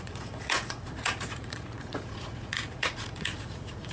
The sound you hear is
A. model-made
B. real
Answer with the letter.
A